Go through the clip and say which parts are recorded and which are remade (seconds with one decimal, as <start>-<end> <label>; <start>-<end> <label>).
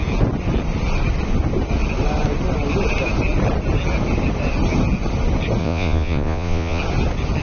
0.0-5.6 recorded; 5.6-6.8 remade; 6.8-7.4 recorded